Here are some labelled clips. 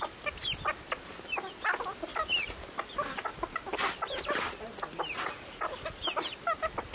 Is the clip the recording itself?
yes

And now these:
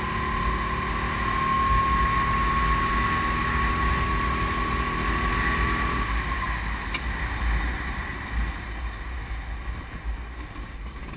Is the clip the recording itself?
yes